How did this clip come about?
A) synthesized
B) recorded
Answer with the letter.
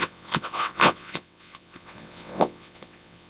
A